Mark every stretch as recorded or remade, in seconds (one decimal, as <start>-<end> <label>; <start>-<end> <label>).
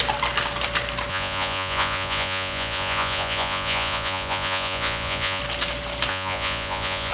0.0-1.1 recorded; 1.1-5.4 remade; 5.4-6.1 recorded; 6.1-7.1 remade